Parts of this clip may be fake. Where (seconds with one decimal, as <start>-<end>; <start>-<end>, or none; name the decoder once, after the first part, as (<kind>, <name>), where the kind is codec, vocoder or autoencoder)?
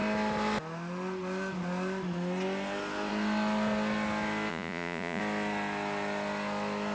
4.5-5.2 (vocoder, Vocos)